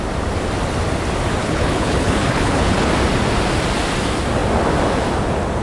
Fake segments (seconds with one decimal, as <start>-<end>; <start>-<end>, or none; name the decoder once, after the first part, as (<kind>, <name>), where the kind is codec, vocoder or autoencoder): 1.4-2.9 (codec, HILCodec)